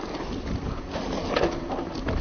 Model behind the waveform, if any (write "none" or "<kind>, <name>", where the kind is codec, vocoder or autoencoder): none